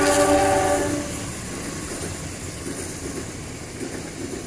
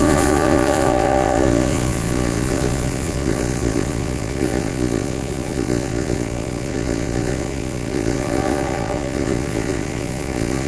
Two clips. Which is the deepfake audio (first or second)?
second